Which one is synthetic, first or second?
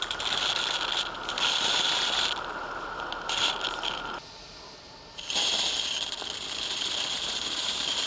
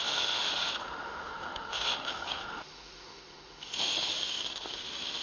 second